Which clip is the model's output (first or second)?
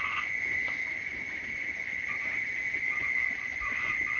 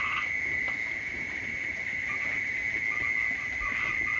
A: first